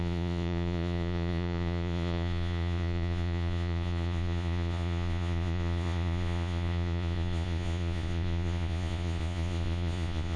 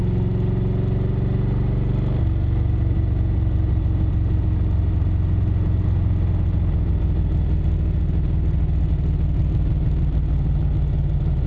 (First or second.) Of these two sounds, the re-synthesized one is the first